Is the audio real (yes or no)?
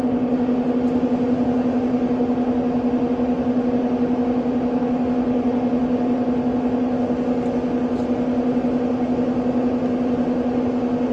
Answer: yes